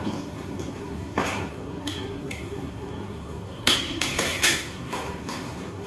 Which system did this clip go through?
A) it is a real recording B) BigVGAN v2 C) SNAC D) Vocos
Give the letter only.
C